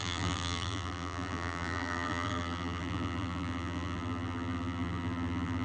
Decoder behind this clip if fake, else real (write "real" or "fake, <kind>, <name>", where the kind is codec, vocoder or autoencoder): fake, vocoder, BigVGAN v2